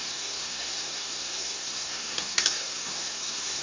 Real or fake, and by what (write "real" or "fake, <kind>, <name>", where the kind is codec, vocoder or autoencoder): fake, codec, SNAC